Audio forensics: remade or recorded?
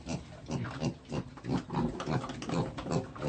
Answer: recorded